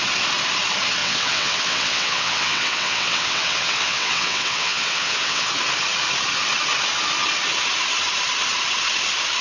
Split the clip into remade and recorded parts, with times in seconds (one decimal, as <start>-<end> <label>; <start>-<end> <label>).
0.0-1.0 recorded; 1.0-5.5 remade; 5.5-9.4 recorded